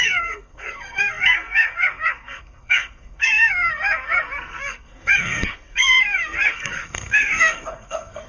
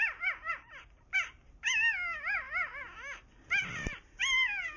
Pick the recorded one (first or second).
second